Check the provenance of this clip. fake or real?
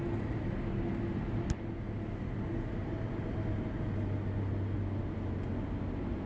real